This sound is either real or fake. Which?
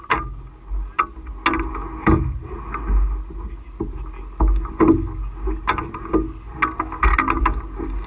real